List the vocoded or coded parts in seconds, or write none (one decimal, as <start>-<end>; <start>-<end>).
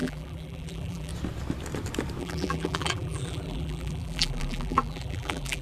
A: 0.0-1.1; 2.2-5.6